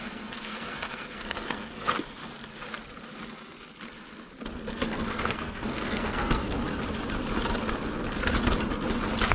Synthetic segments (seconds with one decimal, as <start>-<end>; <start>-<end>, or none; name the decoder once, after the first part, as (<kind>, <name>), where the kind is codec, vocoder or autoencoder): 0.0-2.2 (codec, SNAC); 4.7-6.6